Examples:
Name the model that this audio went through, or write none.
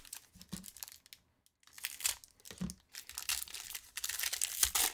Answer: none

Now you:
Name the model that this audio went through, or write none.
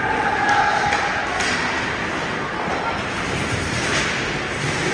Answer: none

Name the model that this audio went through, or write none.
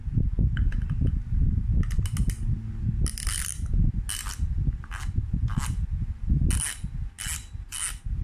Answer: none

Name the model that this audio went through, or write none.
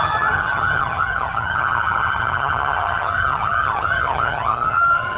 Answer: vocoder, HiFi-GAN